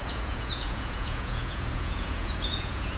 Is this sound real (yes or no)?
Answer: no